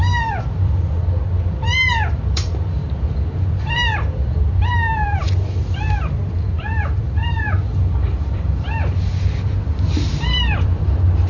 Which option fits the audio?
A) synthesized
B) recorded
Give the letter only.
A